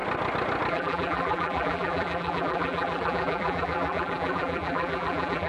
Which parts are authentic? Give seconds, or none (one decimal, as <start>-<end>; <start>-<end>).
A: 0.0-0.7